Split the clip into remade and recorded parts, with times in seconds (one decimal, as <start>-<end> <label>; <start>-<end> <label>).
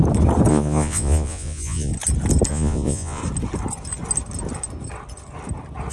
0.0-0.5 recorded; 0.5-1.9 remade; 1.9-2.5 recorded; 2.5-3.2 remade; 3.2-5.9 recorded